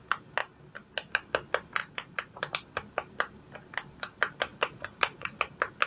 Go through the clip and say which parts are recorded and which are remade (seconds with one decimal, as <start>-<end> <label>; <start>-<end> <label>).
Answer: 0.0-1.8 recorded; 1.8-2.4 remade; 2.4-4.5 recorded; 4.5-5.4 remade; 5.4-5.9 recorded